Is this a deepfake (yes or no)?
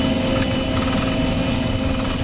no